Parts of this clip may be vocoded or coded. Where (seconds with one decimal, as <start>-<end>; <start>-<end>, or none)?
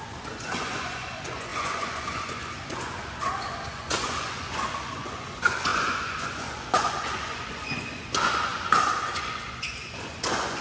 0.0-10.6